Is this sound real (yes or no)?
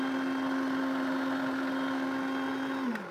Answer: yes